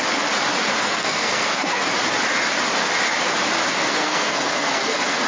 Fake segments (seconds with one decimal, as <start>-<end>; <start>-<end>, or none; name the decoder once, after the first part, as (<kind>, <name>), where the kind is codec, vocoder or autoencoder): 0.7-1.8 (codec, SNAC); 3.7-5.3